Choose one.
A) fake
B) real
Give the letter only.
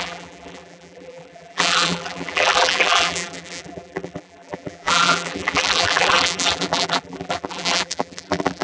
A